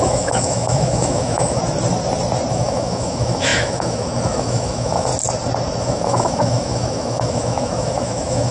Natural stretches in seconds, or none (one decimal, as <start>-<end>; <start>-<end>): 1.6-2.5; 5.1-5.8